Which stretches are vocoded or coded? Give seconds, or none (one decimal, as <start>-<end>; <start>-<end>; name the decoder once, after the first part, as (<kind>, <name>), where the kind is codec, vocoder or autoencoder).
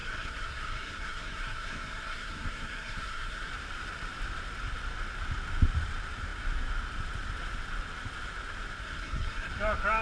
0.0-3.5 (codec, SNAC); 8.8-9.5